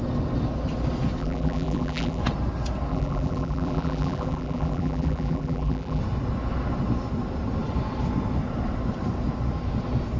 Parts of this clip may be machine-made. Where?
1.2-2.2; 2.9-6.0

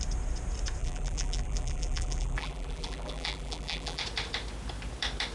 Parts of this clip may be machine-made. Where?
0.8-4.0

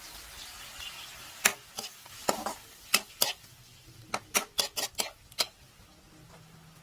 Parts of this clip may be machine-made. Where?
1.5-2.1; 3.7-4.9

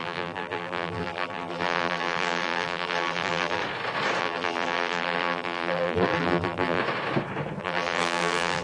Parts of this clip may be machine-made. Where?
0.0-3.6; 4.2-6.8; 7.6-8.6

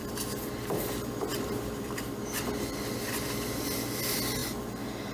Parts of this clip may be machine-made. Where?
1.3-2.2

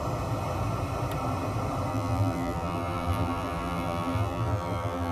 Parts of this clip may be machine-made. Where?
1.9-5.1

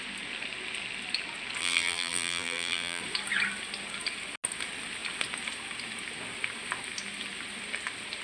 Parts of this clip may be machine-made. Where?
1.6-3.0

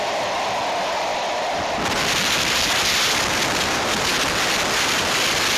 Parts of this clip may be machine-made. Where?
none